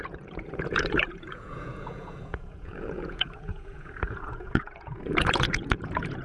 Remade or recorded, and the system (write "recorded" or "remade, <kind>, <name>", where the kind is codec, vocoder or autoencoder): remade, vocoder, Vocos